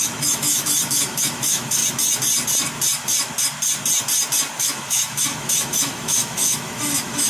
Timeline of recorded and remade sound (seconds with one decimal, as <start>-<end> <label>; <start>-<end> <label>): 0.0-1.8 remade; 1.8-4.6 recorded; 4.6-7.3 remade